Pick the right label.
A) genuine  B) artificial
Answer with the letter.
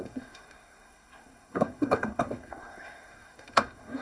B